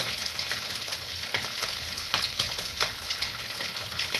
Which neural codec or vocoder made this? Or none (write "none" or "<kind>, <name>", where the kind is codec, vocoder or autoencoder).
codec, HILCodec